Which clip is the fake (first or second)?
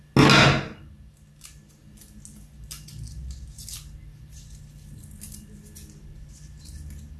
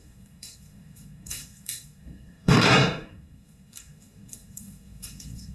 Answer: second